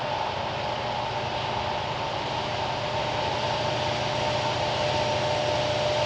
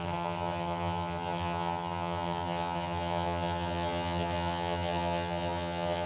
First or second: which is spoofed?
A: second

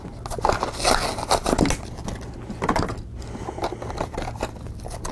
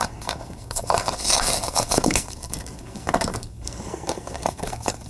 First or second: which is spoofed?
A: second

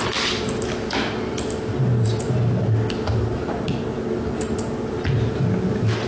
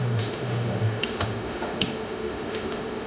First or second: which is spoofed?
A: second